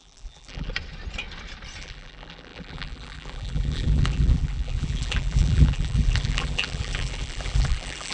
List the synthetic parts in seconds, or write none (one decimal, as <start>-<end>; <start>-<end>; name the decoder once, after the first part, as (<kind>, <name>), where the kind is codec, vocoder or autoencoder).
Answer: 0.0-0.7 (vocoder, BigVGAN v2); 1.8-8.1